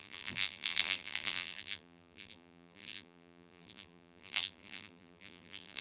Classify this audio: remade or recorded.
remade